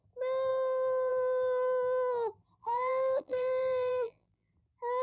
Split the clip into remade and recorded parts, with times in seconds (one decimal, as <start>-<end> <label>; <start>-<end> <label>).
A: 0.0-2.6 recorded; 2.6-4.5 remade; 4.5-5.0 recorded